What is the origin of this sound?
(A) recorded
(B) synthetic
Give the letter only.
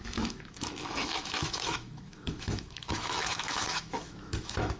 B